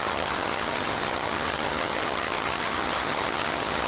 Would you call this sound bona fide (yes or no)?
no